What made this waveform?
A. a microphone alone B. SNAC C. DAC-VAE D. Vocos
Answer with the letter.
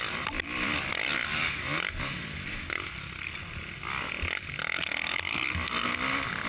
A